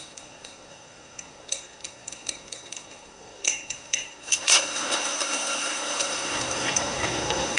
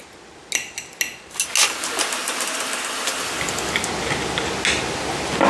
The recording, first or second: second